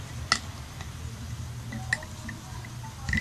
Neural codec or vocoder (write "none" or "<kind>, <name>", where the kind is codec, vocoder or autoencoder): none